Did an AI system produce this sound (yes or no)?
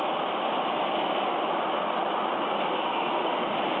no